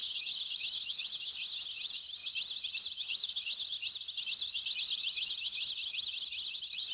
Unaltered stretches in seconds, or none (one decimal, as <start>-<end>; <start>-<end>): 0.6-6.9